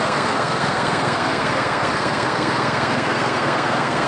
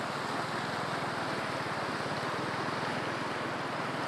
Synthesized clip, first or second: first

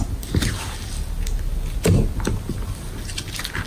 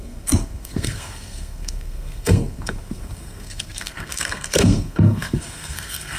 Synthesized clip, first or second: second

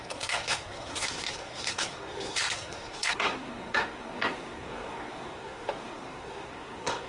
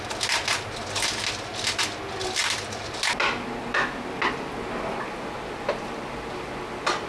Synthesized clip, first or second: first